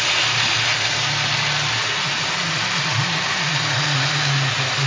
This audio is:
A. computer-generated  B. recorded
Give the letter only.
B